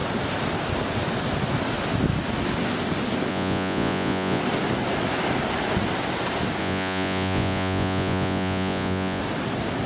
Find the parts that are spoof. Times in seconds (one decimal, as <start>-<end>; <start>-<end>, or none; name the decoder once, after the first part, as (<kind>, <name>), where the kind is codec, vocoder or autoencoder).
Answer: 3.3-4.4 (vocoder, Vocos); 6.6-9.2